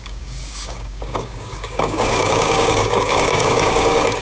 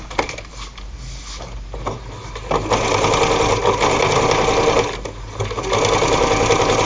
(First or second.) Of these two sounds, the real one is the second